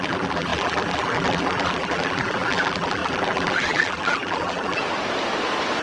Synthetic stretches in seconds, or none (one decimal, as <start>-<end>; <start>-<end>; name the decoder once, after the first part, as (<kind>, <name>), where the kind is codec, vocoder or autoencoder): 0.0-4.8 (vocoder, BigVGAN v2)